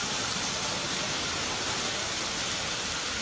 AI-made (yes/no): no